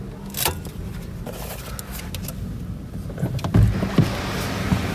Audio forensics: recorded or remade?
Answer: recorded